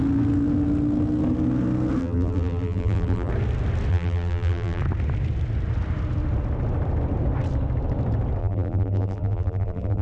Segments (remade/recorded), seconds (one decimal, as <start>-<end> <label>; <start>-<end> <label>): 0.0-2.0 recorded; 2.0-3.3 remade; 3.3-3.9 recorded; 3.9-4.8 remade; 4.8-8.4 recorded; 8.4-10.0 remade